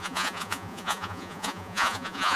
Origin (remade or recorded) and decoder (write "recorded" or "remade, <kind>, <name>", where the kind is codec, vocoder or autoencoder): remade, vocoder, Vocos